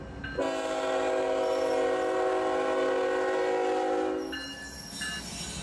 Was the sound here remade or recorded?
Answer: recorded